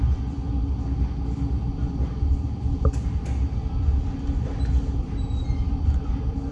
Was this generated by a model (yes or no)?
no